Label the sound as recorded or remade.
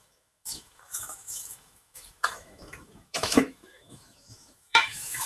remade